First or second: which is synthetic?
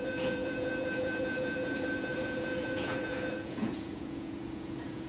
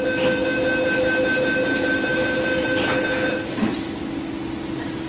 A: first